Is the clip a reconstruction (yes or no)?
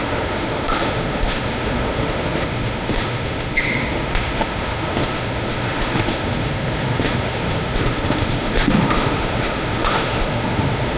yes